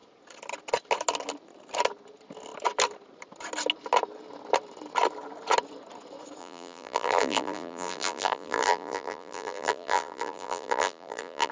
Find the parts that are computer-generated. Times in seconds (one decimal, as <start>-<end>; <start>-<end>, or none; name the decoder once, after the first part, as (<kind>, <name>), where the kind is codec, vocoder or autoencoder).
6.4-11.5 (vocoder, BigVGAN v2)